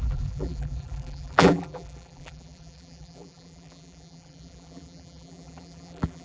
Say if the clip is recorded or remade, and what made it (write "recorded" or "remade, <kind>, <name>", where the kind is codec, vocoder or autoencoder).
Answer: remade, vocoder, BigVGAN v2